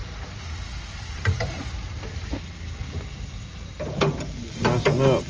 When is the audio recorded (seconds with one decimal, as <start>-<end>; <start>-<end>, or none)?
0.0-5.3